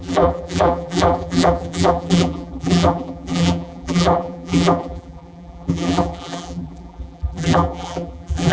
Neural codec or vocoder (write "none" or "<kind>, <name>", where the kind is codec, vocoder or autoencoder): vocoder, BigVGAN v2